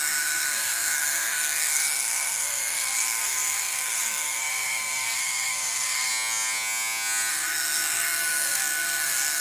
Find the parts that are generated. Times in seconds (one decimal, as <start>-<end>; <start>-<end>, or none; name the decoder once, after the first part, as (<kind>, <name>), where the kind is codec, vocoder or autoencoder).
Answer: 0.0-6.1 (codec, SNAC); 7.3-9.4